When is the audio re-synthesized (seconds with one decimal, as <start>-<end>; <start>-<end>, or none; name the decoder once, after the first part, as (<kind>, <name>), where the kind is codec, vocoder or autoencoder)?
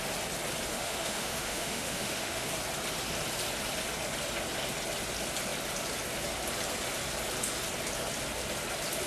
0.7-2.5 (autoencoder, DAC-VAE)